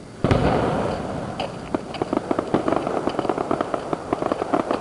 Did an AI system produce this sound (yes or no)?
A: yes